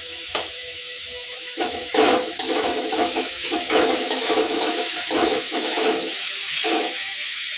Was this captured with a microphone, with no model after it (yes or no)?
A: no